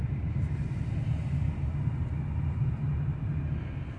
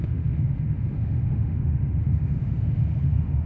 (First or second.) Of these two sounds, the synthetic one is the second